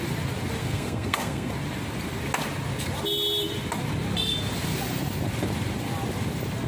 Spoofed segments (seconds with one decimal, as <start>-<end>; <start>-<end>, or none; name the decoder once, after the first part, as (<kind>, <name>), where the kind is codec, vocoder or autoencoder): 0.6-1.5 (codec, SNAC)